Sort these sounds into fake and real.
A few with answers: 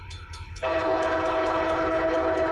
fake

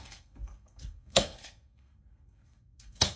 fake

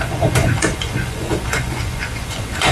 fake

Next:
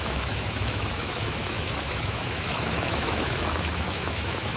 fake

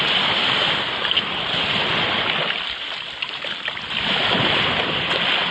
fake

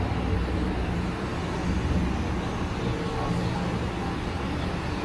real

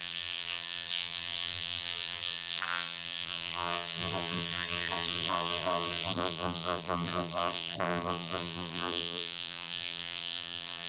fake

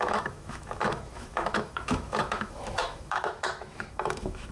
fake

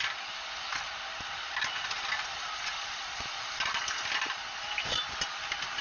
real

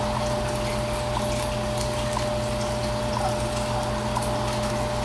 real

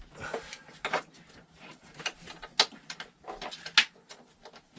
real